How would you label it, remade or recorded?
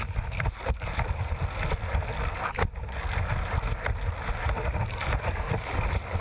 recorded